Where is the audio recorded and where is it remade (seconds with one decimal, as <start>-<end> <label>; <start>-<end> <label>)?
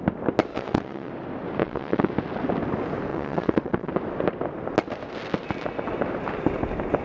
0.0-0.5 recorded; 0.5-1.1 remade; 1.1-1.6 recorded; 1.6-2.1 remade; 2.1-3.1 recorded; 3.1-3.9 remade; 3.9-7.0 recorded